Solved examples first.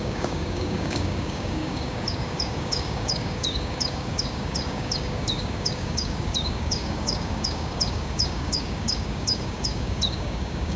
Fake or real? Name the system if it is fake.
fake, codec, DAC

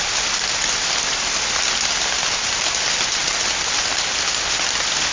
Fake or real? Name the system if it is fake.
real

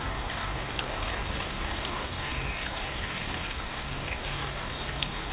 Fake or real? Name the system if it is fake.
fake, codec, DAC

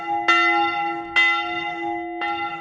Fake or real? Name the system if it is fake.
real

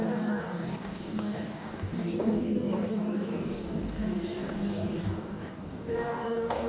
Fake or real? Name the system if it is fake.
fake, codec, DAC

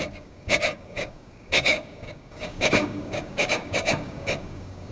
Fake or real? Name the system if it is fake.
fake, codec, DAC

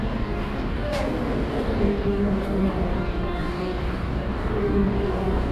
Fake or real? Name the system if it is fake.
fake, codec, DAC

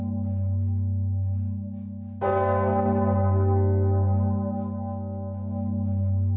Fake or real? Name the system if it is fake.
real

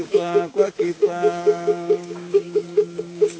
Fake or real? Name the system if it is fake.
fake, codec, DAC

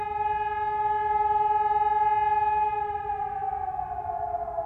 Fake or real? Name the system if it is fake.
real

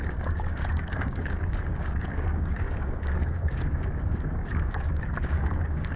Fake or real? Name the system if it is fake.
fake, codec, DAC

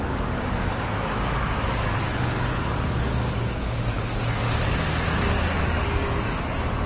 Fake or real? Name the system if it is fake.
fake, codec, DAC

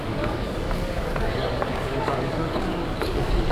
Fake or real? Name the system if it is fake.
fake, codec, DAC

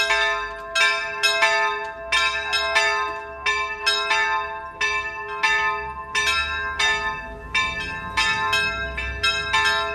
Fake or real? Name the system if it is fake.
real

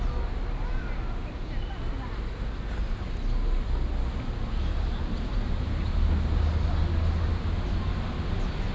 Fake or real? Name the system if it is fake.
real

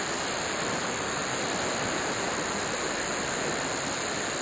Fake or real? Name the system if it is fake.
real